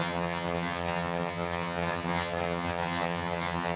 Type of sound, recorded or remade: remade